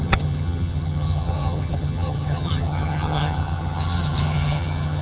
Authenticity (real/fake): fake